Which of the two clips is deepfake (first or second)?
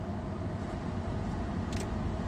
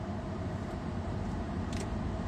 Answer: second